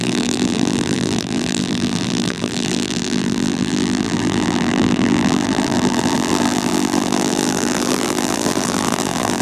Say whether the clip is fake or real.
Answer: fake